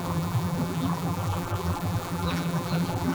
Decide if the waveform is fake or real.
fake